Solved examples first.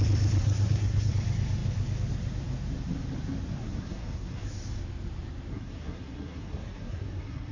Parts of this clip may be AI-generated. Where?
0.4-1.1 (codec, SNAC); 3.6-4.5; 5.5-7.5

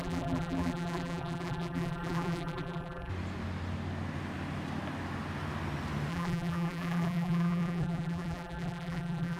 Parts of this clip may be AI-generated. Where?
0.0-3.1 (vocoder, BigVGAN v2); 6.1-9.4

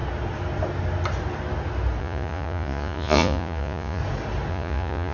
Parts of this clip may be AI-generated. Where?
2.0-4.0 (vocoder, Vocos); 4.5-5.1

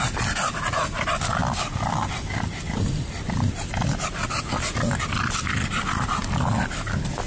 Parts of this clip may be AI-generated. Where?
1.4-4.4 (vocoder, BigVGAN v2)

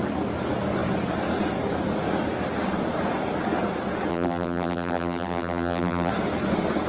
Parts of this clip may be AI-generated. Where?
4.1-6.1 (vocoder, BigVGAN v2)

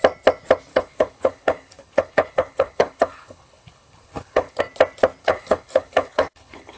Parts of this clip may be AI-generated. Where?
0.7-4.6 (codec, HILCodec); 5.2-6.8